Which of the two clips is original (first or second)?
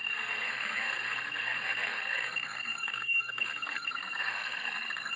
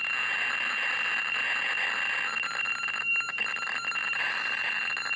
second